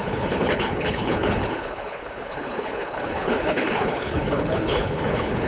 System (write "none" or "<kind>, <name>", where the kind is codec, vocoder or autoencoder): codec, HILCodec